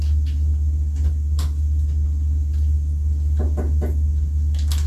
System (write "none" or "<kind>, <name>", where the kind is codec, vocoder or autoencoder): none